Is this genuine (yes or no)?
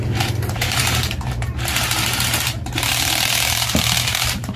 no